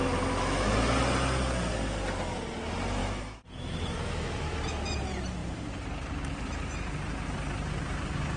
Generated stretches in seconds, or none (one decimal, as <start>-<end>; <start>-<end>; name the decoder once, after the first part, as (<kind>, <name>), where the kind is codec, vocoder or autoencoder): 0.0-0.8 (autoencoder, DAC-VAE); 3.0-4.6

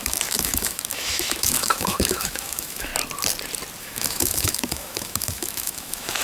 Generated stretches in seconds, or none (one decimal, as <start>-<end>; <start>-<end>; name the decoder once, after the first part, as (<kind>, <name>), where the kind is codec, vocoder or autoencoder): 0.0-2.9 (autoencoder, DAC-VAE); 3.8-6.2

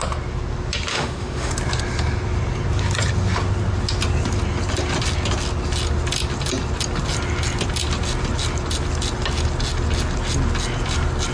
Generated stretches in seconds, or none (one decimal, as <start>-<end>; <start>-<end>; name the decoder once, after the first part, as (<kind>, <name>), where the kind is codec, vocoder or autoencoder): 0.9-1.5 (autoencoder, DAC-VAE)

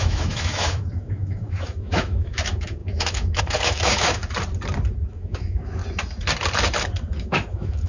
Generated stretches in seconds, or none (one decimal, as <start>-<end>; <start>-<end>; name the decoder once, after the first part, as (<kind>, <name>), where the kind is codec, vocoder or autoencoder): 0.0-4.2 (autoencoder, DAC-VAE); 5.1-5.8; 7.2-7.9

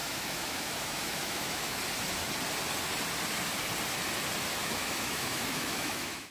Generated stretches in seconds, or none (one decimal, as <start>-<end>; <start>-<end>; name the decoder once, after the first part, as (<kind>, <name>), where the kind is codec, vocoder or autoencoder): 0.0-1.8 (autoencoder, DAC-VAE); 4.6-6.3